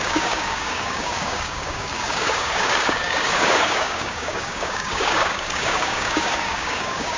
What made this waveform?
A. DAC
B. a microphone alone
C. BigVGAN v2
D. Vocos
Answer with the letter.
A